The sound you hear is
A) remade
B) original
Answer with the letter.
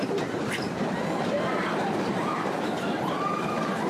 A